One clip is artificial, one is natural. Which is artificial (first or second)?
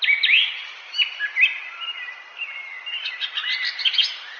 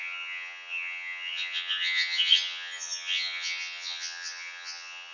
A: second